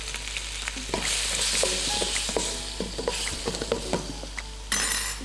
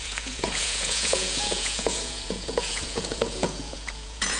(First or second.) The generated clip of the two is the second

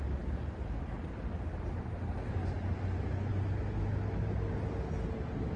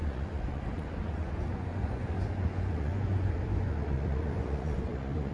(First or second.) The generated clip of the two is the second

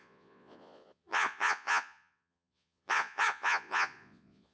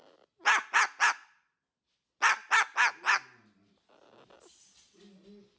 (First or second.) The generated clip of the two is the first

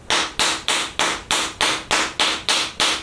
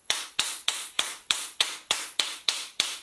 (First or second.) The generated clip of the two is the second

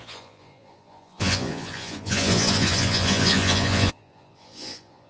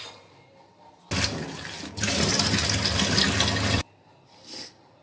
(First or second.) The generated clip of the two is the first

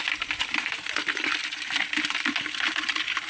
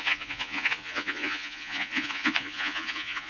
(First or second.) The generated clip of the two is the second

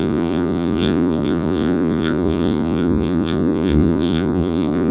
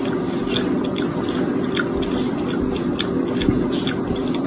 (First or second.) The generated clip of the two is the first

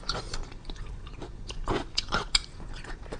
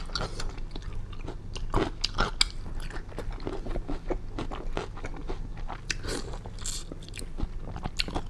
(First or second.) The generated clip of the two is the first